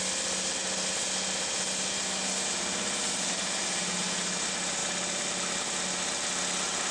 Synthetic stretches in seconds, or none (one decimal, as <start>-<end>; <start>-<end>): none